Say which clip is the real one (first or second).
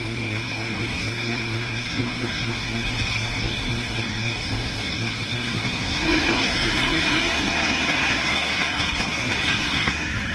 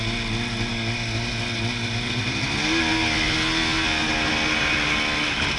second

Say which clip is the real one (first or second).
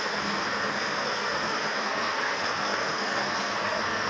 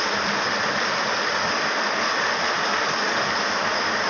second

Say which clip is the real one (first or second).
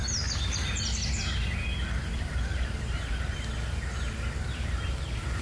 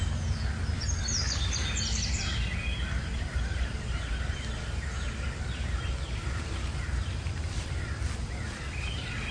first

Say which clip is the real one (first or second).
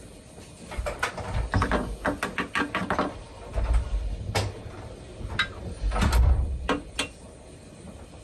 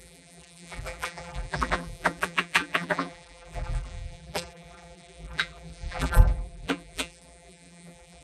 first